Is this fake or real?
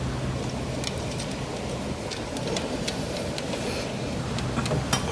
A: real